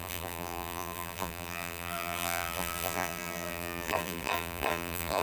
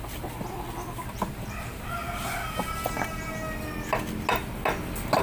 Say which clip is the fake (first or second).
first